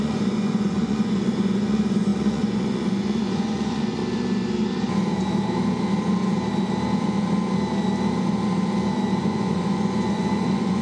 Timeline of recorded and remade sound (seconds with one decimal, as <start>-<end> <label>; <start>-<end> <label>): 0.0-4.0 remade; 4.0-9.2 recorded; 9.2-10.8 remade